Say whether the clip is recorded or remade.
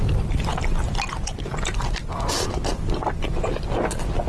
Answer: recorded